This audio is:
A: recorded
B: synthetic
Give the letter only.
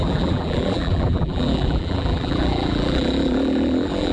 B